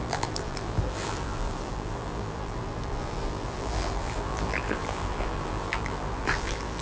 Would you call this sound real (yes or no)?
no